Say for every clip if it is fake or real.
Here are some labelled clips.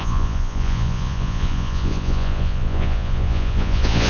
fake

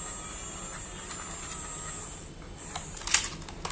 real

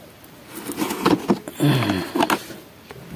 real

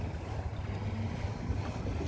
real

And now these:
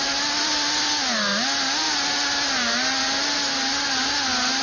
real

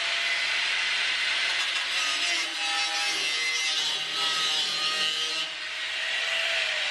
real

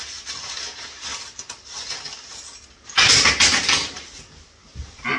real